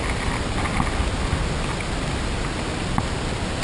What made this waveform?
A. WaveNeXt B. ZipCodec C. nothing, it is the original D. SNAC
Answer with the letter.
C